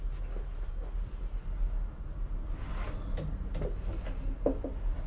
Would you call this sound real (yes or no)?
yes